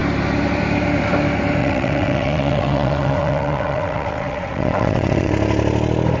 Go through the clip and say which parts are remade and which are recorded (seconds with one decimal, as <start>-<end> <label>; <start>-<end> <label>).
0.0-1.6 recorded; 1.6-5.3 remade; 5.3-6.2 recorded